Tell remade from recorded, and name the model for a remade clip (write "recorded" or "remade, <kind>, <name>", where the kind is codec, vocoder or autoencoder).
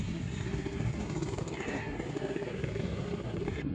remade, codec, SNAC